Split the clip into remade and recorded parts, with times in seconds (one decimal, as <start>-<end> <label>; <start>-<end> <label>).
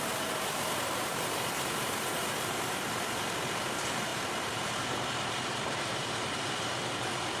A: 0.0-7.4 remade